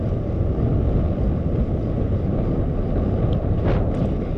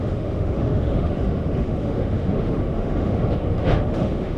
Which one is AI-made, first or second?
second